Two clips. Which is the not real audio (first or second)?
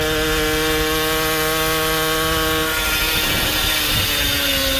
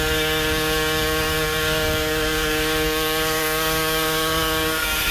second